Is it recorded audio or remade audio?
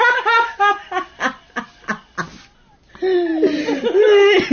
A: recorded